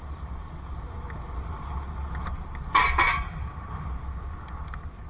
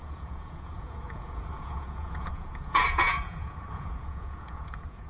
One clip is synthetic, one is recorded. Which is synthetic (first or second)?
second